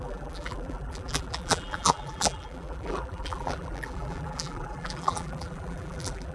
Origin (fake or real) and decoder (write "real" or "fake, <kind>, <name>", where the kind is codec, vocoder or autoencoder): fake, vocoder, BigVGAN v2